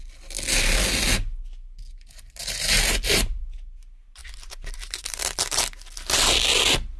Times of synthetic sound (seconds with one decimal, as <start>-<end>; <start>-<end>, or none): 2.4-3.4; 4.2-5.6